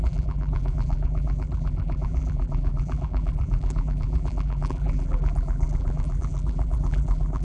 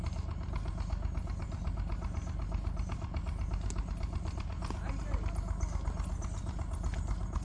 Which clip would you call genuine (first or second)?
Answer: second